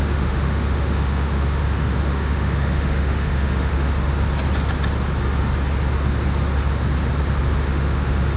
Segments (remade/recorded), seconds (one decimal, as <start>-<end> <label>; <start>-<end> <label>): 0.0-4.1 remade; 4.1-7.7 recorded; 7.7-8.4 remade